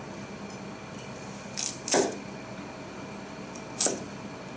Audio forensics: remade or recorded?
recorded